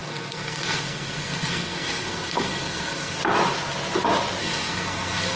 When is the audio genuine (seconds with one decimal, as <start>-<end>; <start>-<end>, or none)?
3.2-4.4